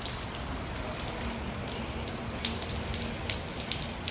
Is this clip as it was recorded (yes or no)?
yes